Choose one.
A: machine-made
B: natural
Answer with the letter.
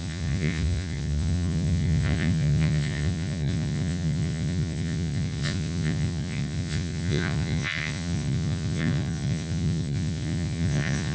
A